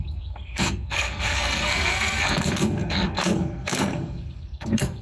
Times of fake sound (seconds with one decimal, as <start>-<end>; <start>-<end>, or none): 0.0-5.0